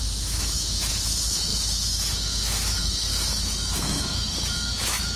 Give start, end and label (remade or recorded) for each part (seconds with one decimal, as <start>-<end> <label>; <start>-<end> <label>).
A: 0.0-5.2 remade